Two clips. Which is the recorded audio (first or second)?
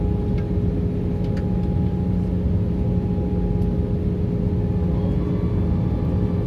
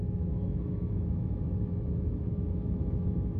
first